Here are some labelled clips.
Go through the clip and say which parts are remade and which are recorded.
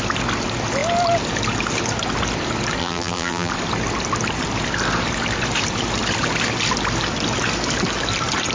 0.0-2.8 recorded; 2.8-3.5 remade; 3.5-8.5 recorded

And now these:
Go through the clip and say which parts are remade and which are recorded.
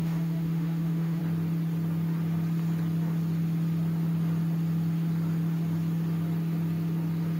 0.0-1.2 remade; 1.2-7.4 recorded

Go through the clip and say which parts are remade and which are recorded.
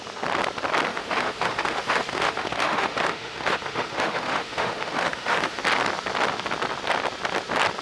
0.0-0.9 recorded; 0.9-5.6 remade; 5.6-7.8 recorded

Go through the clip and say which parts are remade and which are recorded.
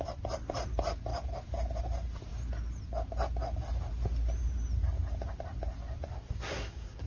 0.0-6.1 recorded; 6.1-7.1 remade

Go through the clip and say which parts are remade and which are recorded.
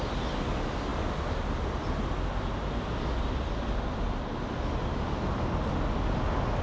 0.0-6.6 recorded